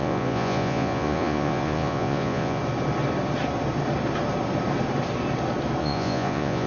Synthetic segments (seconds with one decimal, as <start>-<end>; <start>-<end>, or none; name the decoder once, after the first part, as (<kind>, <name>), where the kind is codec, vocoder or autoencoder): 0.0-2.6 (vocoder, Vocos); 5.8-6.7